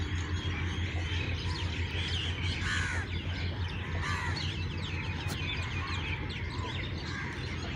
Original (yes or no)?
yes